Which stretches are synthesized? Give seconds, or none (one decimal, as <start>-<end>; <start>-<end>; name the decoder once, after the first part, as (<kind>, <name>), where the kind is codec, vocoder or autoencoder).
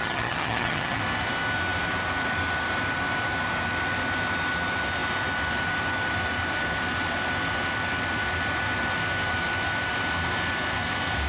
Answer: 0.0-1.0 (vocoder, HiFi-GAN)